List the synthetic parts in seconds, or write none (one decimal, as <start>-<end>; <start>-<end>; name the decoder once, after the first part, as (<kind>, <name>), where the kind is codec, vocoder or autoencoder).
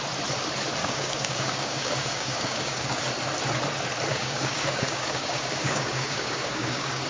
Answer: 0.8-3.0 (codec, DAC); 4.1-7.1